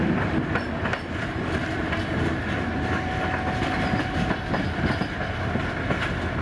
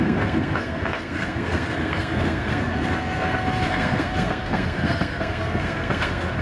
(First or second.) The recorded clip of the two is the first